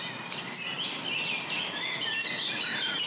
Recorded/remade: recorded